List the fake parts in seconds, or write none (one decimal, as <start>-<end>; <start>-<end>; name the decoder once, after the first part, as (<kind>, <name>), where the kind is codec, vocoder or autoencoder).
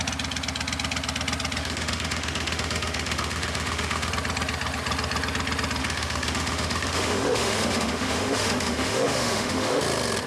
1.6-4.1 (autoencoder, DAC-VAE); 5.8-9.8